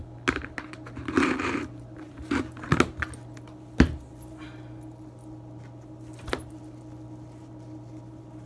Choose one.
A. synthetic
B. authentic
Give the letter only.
B